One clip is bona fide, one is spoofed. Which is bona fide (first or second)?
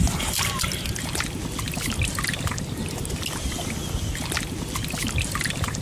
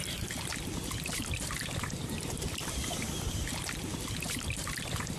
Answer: first